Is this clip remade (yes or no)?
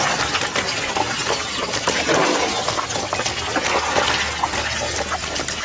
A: no